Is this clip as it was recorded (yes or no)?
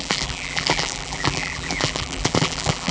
no